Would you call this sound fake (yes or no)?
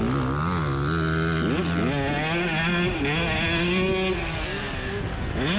no